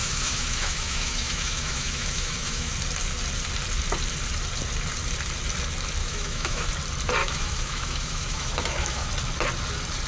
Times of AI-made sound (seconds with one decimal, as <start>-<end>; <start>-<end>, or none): 0.0-2.7; 6.0-6.7; 7.2-9.1